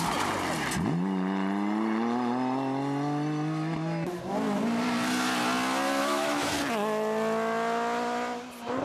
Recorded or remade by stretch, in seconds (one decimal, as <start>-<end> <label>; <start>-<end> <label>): 0.0-6.0 recorded; 6.0-6.5 remade; 6.5-8.8 recorded